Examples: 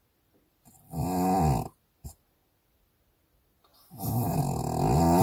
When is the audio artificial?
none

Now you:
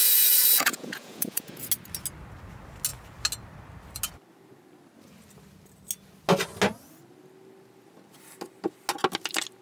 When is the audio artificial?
0.0-1.7 (vocoder, Vocos)

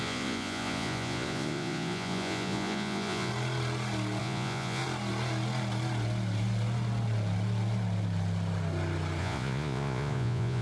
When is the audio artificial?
0.0-3.3 (vocoder, Vocos); 4.2-4.8; 9.2-10.6

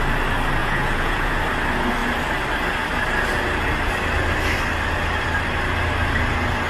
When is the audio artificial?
0.6-1.4 (vocoder, Vocos)

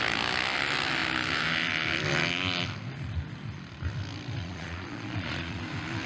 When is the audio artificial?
4.4-5.6 (vocoder, Vocos)

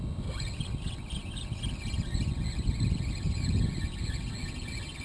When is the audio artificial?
none

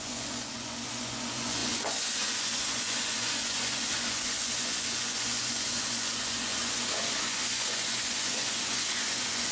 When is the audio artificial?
0.0-9.5 (vocoder, Vocos)